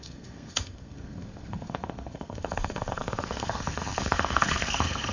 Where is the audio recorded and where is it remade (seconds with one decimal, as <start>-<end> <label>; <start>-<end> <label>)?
0.0-5.1 remade